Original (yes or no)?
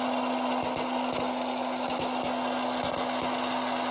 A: yes